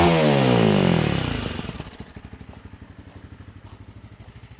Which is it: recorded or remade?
recorded